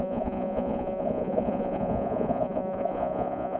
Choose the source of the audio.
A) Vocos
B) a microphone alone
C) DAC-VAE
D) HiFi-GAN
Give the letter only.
A